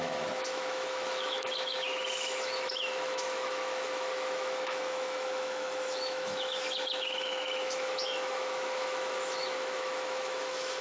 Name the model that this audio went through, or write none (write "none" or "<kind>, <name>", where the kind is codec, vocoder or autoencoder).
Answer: autoencoder, DAC-VAE